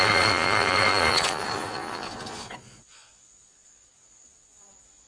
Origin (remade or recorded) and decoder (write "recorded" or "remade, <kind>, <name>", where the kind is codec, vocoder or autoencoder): remade, vocoder, Vocos